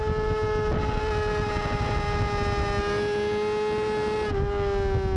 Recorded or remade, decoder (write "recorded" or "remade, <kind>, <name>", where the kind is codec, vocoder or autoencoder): recorded